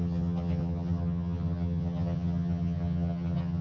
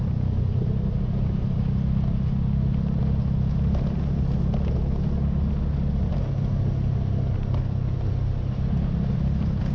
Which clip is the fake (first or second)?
first